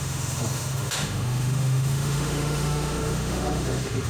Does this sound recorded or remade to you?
remade